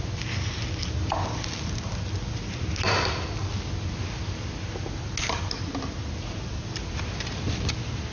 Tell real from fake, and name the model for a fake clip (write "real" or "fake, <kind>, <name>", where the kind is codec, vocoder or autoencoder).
real